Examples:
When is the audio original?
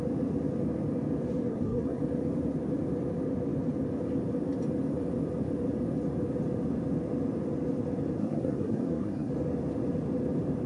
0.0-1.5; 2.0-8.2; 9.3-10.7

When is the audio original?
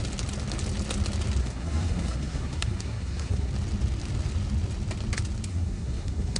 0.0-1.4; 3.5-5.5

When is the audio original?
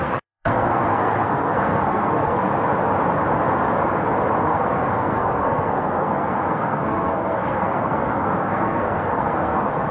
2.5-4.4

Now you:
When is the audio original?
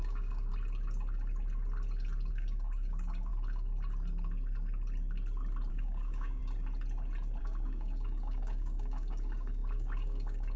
0.5-2.3; 3.3-5.7; 6.4-7.4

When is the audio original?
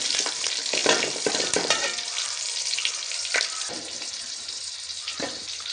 none